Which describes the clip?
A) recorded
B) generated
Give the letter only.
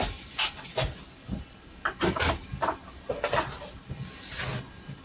A